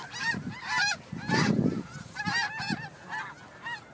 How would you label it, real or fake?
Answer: real